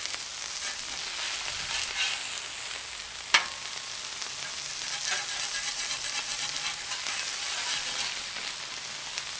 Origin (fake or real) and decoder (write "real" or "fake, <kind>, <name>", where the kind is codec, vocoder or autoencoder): real